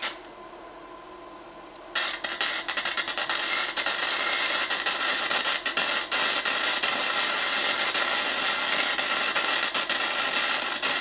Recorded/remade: recorded